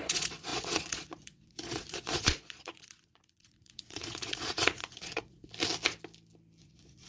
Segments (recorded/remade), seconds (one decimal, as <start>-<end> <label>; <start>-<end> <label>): 0.0-5.5 remade; 5.5-6.6 recorded; 6.6-7.1 remade